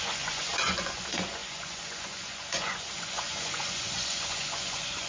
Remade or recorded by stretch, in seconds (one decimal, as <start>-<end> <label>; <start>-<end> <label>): 0.0-5.1 remade